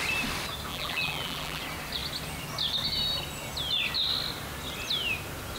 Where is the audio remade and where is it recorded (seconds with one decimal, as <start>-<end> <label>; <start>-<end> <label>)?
0.0-0.7 recorded; 0.7-1.6 remade; 1.6-5.6 recorded